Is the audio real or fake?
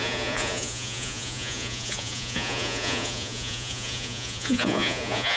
fake